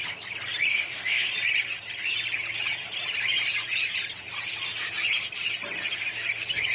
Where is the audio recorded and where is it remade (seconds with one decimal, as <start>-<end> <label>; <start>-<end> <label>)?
0.0-0.7 recorded; 0.7-1.3 remade; 1.3-6.7 recorded